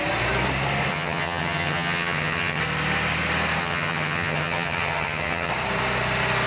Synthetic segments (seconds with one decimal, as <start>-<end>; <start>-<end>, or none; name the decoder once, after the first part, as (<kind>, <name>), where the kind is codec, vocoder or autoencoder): 0.9-2.6 (vocoder, HiFi-GAN); 3.6-5.5